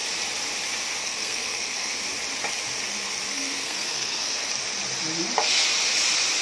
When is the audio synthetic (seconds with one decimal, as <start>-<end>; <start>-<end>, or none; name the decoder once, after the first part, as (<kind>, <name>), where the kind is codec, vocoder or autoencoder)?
1.0-2.0 (codec, SNAC); 3.3-4.5